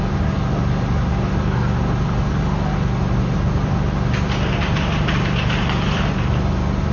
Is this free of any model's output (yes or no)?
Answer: yes